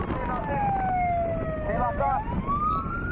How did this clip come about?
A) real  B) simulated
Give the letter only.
A